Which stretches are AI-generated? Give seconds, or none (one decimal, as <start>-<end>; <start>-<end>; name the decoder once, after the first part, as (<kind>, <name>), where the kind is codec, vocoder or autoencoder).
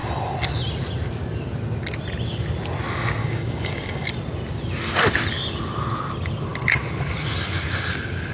3.2-4.1 (codec, DAC)